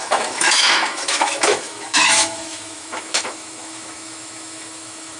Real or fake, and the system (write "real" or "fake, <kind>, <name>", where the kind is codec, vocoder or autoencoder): fake, autoencoder, DAC-VAE